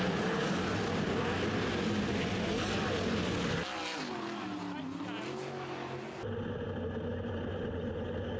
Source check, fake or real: real